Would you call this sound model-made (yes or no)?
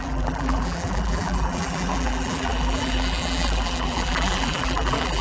yes